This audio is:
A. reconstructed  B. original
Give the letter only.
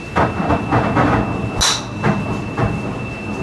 B